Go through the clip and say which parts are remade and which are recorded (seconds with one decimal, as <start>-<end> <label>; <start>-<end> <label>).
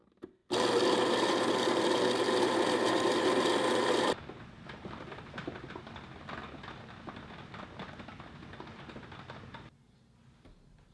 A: 0.0-10.9 recorded